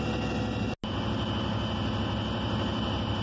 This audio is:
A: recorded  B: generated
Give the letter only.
A